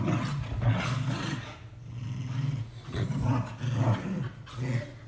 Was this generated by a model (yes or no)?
no